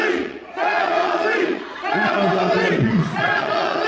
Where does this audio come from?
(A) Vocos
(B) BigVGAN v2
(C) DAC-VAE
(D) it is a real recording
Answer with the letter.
A